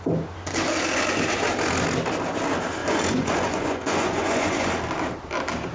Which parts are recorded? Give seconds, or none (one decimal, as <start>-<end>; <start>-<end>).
0.0-2.8; 4.7-5.7